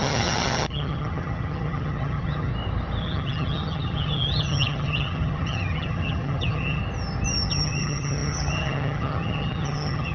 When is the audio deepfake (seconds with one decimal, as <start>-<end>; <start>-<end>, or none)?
0.0-2.5; 3.0-6.8; 7.5-10.1